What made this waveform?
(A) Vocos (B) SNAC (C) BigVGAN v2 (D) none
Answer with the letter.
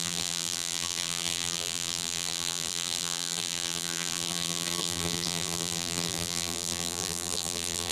C